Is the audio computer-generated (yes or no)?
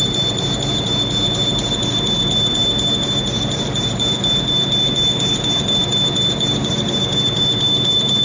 no